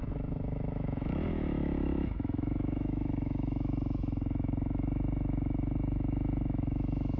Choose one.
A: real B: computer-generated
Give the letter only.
B